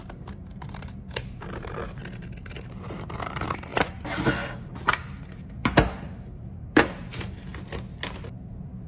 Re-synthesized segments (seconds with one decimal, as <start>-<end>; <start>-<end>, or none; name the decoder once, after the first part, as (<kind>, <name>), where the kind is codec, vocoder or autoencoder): 0.0-1.8 (vocoder, BigVGAN v2); 2.4-7.5; 8.2-8.9